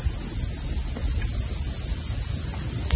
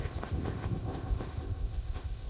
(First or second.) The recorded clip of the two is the first